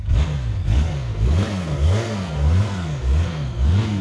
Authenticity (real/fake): fake